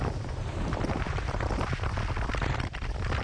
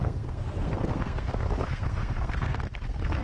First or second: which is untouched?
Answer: first